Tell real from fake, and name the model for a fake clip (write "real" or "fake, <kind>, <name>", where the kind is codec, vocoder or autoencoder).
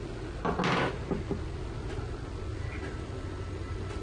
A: real